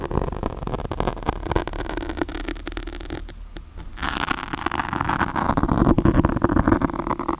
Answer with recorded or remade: recorded